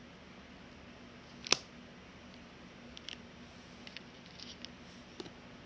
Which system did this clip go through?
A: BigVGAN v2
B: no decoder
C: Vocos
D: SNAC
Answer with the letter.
B